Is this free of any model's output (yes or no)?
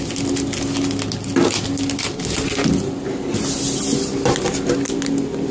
yes